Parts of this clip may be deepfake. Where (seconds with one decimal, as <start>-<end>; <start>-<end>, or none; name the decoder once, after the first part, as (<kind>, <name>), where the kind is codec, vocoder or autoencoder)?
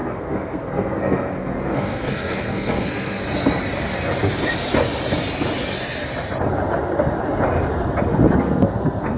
0.0-3.2 (codec, SNAC); 8.4-9.2